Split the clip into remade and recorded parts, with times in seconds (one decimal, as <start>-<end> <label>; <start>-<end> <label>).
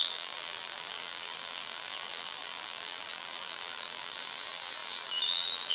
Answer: 0.0-5.7 remade